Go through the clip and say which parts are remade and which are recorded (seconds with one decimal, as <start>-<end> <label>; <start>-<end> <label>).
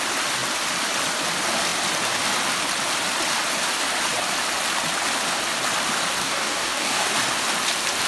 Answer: 0.0-6.2 recorded; 6.2-7.1 remade; 7.1-8.1 recorded